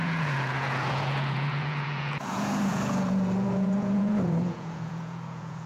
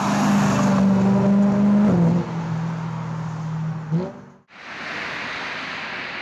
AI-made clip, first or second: first